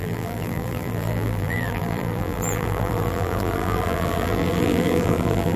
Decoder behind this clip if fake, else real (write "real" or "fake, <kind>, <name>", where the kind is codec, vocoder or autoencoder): fake, vocoder, BigVGAN v2